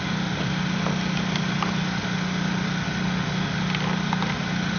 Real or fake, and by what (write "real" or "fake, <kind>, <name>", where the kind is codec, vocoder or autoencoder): real